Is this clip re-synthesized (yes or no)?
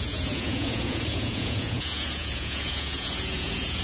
yes